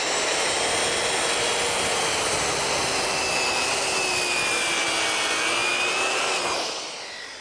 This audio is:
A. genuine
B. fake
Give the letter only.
A